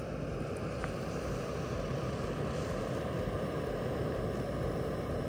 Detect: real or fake real